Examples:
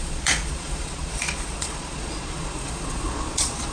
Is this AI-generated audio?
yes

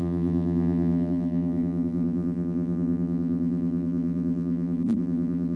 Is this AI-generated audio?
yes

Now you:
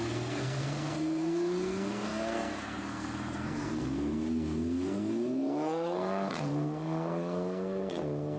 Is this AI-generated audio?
yes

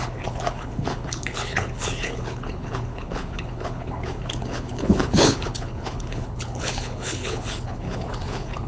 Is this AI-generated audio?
yes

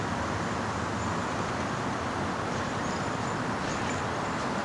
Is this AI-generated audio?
no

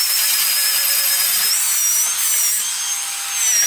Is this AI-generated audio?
no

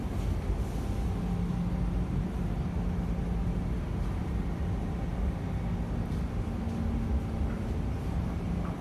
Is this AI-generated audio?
no